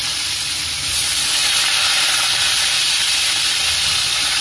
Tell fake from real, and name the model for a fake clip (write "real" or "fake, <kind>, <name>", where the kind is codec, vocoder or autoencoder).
real